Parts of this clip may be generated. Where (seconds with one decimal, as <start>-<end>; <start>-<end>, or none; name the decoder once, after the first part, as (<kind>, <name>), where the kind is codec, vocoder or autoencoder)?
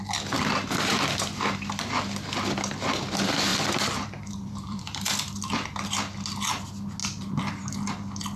3.5-5.5 (vocoder, BigVGAN v2); 7.0-7.5